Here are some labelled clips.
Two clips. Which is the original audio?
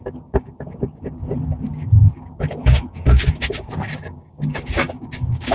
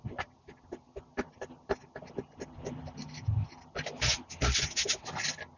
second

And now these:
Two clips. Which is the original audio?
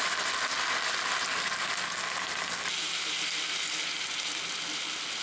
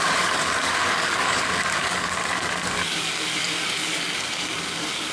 first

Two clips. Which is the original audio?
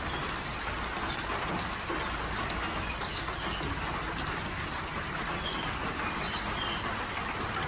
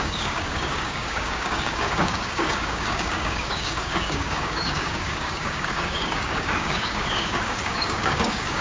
first